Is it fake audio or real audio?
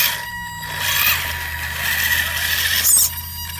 real